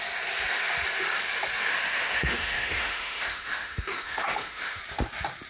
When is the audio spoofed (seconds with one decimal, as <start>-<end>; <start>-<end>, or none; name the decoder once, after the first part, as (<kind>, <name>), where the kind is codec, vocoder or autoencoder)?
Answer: 1.7-4.8 (autoencoder, DAC-VAE)

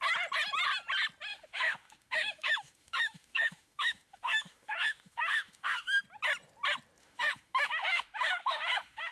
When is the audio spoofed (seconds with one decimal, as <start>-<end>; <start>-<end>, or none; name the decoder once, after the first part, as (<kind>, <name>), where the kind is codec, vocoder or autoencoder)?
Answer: 1.3-6.0 (autoencoder, DAC-VAE); 7.0-9.1

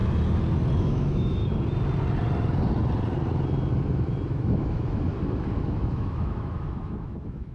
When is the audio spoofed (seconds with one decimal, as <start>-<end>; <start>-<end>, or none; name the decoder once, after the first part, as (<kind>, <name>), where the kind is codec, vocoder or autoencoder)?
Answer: 0.8-1.4 (autoencoder, DAC-VAE); 4.3-5.1; 5.6-7.5

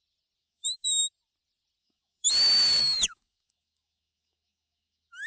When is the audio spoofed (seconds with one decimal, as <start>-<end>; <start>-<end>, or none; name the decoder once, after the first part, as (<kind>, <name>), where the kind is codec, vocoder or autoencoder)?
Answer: 0.4-1.0 (autoencoder, DAC-VAE); 1.8-2.3; 2.8-5.3

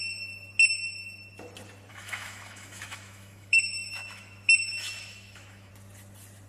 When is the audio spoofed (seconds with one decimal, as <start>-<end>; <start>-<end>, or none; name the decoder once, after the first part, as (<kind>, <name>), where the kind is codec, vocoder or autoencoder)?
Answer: 1.9-5.7 (autoencoder, DAC-VAE)